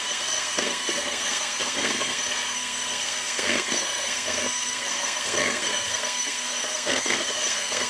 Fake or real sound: fake